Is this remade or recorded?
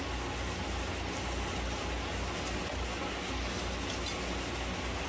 recorded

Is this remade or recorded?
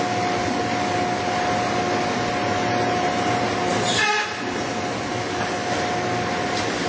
recorded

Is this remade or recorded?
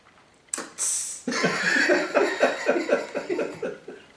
recorded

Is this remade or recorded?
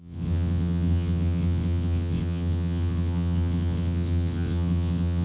remade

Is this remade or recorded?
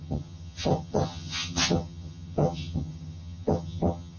remade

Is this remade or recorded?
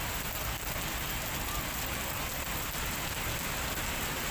recorded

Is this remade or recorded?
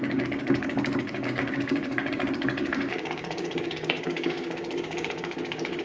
remade